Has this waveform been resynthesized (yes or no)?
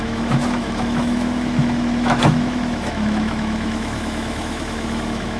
yes